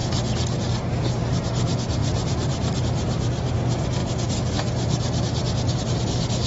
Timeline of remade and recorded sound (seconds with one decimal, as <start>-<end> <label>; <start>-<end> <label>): 0.0-2.0 recorded; 2.0-2.8 remade; 2.8-6.5 recorded